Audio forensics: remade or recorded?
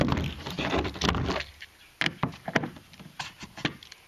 recorded